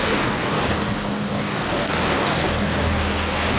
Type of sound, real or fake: fake